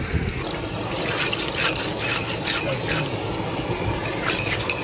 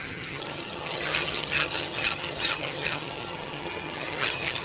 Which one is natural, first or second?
first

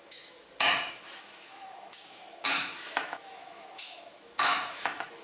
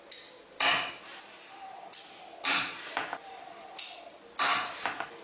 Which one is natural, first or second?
second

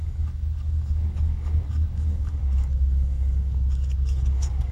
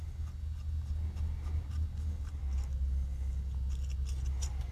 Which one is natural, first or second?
second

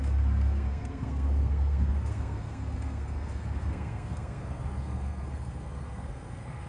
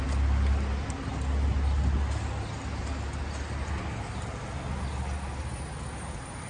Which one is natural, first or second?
second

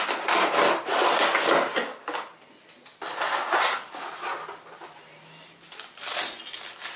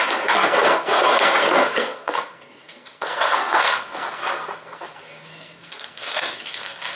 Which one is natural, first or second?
first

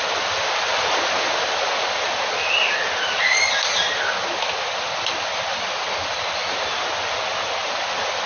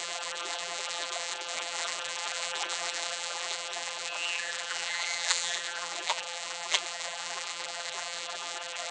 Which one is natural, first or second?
first